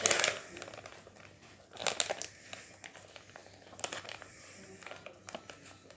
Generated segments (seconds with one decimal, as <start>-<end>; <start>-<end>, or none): 1.8-2.4; 3.4-4.3